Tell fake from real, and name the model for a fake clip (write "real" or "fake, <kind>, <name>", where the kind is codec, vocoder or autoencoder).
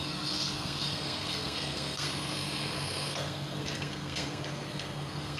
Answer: fake, codec, SNAC